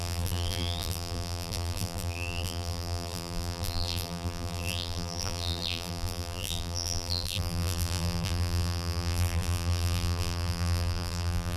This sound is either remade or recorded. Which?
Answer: remade